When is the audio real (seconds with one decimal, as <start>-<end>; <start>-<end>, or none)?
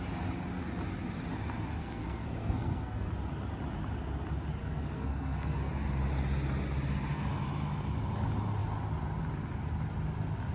0.0-1.8; 3.1-4.6; 5.7-10.5